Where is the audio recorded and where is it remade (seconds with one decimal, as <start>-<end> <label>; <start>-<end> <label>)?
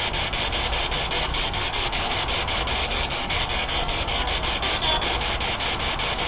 0.0-1.3 recorded; 1.3-2.1 remade; 2.1-2.8 recorded; 2.8-4.3 remade; 4.3-6.3 recorded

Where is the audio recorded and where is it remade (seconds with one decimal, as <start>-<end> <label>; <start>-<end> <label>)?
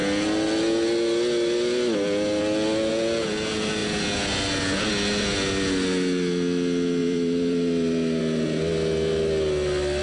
0.0-7.0 recorded; 7.0-8.2 remade; 8.2-10.0 recorded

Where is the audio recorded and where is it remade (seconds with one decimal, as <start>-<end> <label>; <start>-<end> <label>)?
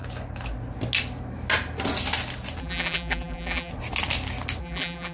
0.0-2.6 recorded; 2.6-3.7 remade; 3.7-4.6 recorded; 4.6-5.1 remade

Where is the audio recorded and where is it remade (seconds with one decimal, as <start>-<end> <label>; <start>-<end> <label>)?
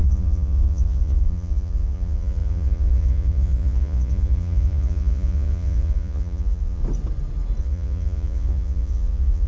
0.0-6.8 remade; 6.8-7.6 recorded; 7.6-9.5 remade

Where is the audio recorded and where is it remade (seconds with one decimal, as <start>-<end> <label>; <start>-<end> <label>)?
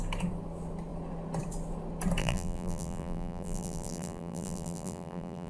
0.0-2.2 recorded; 2.2-5.5 remade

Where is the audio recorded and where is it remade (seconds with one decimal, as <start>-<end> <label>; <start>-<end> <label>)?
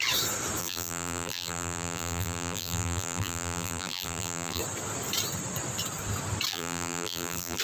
0.0-0.6 recorded; 0.6-4.6 remade; 4.6-6.5 recorded; 6.5-7.6 remade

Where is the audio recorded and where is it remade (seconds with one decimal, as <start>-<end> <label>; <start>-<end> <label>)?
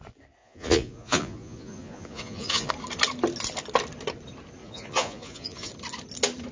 0.0-0.4 recorded; 0.4-2.7 remade; 2.7-4.6 recorded; 4.6-5.7 remade; 5.7-6.5 recorded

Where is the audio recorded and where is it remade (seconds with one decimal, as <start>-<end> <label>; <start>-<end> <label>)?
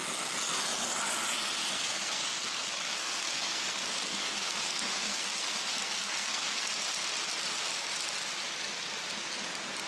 0.0-1.7 recorded; 1.7-6.7 remade; 6.7-9.9 recorded